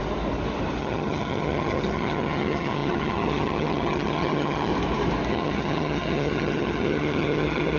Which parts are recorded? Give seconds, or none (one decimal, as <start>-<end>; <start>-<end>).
0.0-0.8; 4.7-5.3